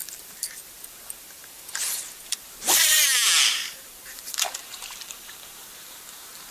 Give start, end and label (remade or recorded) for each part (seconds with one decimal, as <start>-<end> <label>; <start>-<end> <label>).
0.0-3.0 remade; 3.0-3.5 recorded; 3.5-6.5 remade